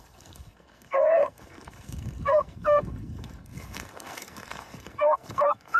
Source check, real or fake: fake